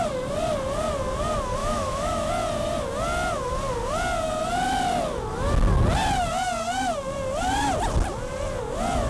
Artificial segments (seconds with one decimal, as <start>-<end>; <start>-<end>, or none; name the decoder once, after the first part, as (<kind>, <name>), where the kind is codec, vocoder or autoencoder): 1.6-2.3 (autoencoder, DAC-VAE)